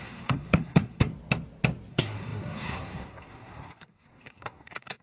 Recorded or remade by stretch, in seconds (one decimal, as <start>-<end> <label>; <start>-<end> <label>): 0.0-1.1 remade; 1.1-1.9 recorded; 1.9-5.0 remade

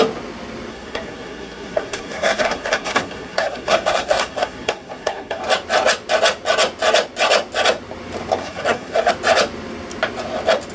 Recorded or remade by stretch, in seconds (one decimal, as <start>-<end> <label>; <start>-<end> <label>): 0.0-0.7 recorded; 0.7-5.4 remade; 5.4-8.4 recorded; 8.4-9.1 remade; 9.1-10.7 recorded

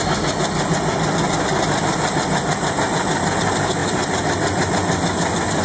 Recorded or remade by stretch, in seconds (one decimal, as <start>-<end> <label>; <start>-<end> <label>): 0.0-5.6 recorded

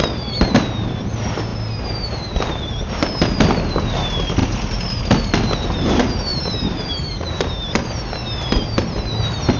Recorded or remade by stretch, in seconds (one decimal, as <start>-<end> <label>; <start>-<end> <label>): 0.0-4.4 recorded; 4.4-5.0 remade; 5.0-6.3 recorded; 6.3-7.1 remade; 7.1-9.6 recorded

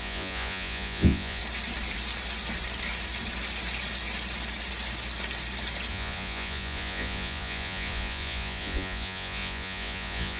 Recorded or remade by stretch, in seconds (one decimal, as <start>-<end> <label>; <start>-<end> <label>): 0.0-1.4 remade; 1.4-5.9 recorded; 5.9-10.4 remade

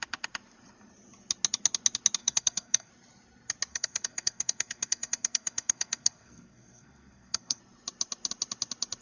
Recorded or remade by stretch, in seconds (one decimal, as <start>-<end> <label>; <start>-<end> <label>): 0.0-2.2 recorded; 2.2-2.9 remade; 2.9-3.7 recorded; 3.7-7.6 remade; 7.6-9.0 recorded

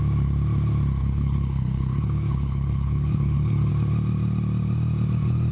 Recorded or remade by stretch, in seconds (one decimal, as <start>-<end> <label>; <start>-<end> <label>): 0.0-1.0 recorded; 1.0-3.7 remade; 3.7-5.5 recorded

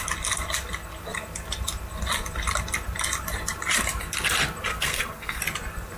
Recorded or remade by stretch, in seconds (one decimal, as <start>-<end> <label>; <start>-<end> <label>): 0.0-4.7 recorded; 4.7-5.4 remade; 5.4-6.0 recorded